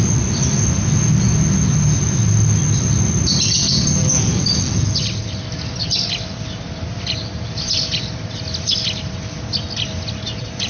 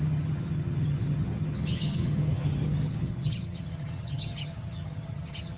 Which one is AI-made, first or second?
second